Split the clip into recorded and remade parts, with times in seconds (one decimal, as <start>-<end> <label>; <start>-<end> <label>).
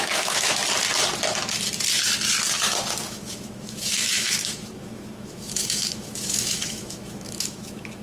0.0-0.6 remade; 0.6-3.1 recorded; 3.1-8.0 remade